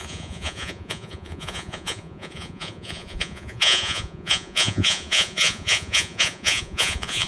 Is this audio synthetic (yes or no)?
yes